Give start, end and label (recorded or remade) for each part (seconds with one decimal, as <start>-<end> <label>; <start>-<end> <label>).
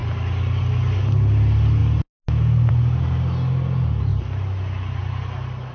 0.0-5.7 recorded